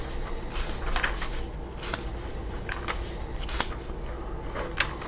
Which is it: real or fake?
real